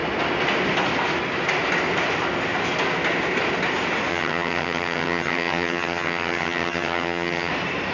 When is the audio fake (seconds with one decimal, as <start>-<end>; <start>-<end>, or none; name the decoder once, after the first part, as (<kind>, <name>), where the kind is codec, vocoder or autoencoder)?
4.1-7.5 (vocoder, HiFi-GAN)